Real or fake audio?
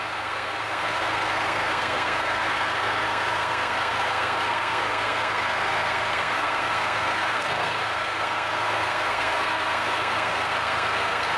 fake